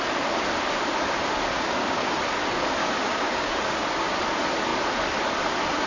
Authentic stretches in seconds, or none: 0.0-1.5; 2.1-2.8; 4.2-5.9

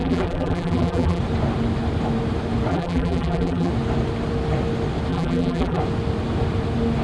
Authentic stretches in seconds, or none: 1.2-2.7; 3.7-5.1; 5.8-7.0

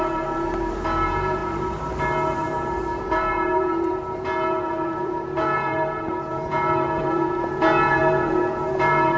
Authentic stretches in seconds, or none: none